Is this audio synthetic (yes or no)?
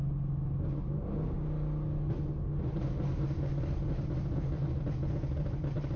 no